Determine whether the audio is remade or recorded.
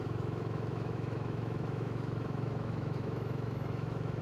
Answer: remade